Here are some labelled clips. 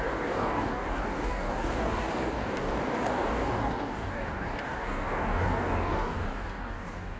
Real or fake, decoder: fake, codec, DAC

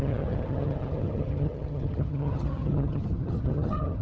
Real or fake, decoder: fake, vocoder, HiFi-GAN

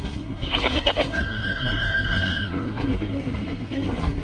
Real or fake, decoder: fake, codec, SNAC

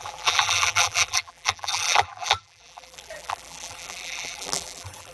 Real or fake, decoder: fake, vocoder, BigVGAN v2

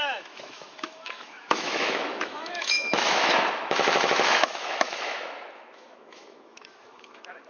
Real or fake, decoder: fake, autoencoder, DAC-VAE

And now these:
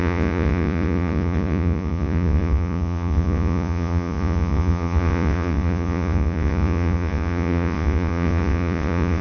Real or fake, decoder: fake, vocoder, Vocos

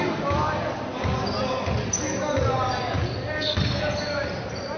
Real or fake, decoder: real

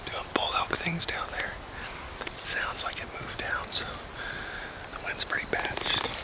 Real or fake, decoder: real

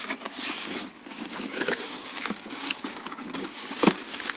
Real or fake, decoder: fake, codec, DAC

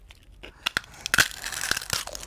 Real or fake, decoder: real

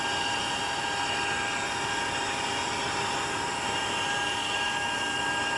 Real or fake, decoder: real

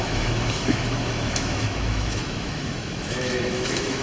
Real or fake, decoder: fake, autoencoder, DAC-VAE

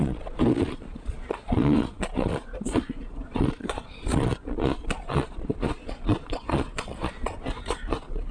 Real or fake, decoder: fake, vocoder, Vocos